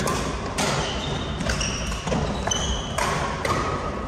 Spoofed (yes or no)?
no